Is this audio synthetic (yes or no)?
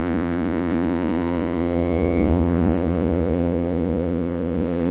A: yes